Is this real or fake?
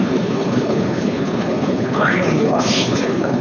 fake